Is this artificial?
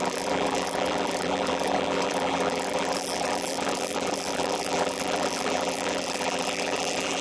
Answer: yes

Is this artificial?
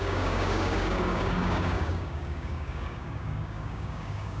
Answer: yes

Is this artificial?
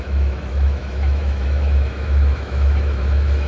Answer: yes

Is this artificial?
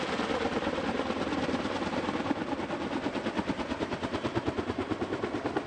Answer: no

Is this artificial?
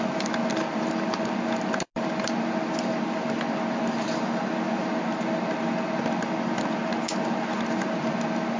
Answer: no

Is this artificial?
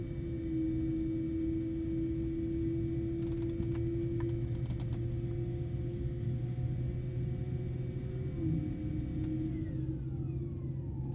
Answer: no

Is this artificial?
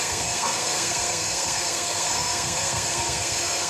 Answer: yes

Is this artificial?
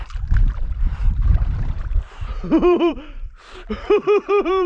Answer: yes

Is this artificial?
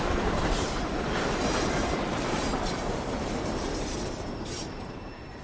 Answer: yes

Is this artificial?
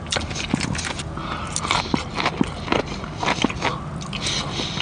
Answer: no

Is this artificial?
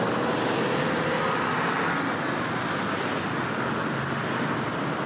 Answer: no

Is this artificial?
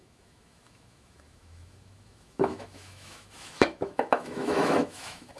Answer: yes